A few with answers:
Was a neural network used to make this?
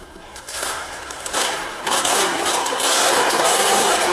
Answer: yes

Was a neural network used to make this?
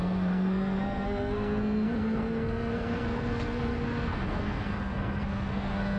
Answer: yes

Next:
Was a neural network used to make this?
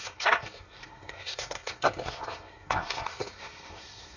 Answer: yes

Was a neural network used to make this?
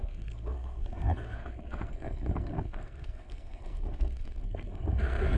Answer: yes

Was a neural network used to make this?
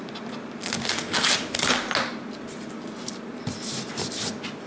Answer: no